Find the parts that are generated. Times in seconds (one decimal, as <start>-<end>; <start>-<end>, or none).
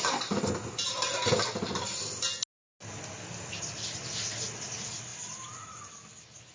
none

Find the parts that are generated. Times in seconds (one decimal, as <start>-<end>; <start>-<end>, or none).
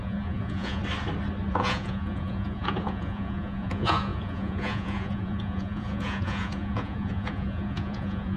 0.0-0.8; 1.5-8.4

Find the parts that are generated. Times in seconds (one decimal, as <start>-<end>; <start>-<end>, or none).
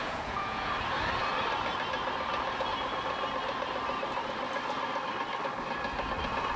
0.0-0.7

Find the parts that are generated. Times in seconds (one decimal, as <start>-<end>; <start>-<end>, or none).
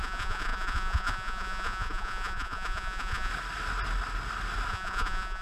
0.0-3.3; 4.7-5.4